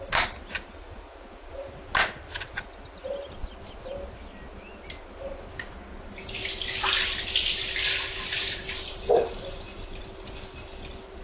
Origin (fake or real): real